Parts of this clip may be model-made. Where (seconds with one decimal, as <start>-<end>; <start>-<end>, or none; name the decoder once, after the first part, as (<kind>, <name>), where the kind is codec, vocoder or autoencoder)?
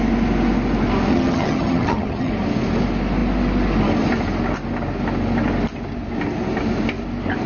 1.1-2.3 (vocoder, HiFi-GAN)